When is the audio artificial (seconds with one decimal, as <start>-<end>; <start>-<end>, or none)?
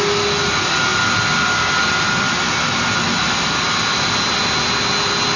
none